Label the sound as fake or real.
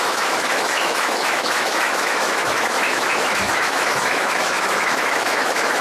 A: fake